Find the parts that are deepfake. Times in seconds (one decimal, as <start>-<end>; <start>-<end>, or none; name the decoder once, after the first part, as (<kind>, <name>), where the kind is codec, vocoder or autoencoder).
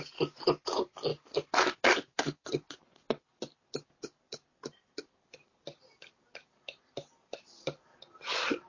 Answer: none